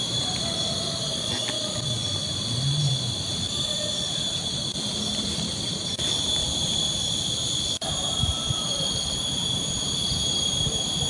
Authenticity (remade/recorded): remade